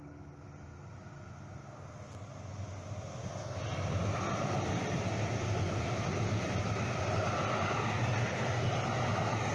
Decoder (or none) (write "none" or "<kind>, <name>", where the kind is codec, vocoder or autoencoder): none